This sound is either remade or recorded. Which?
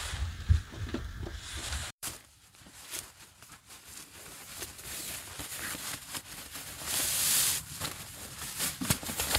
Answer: remade